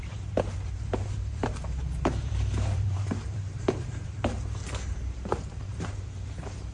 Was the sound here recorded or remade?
remade